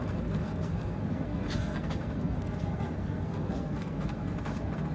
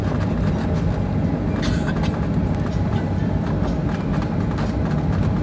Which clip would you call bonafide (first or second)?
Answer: second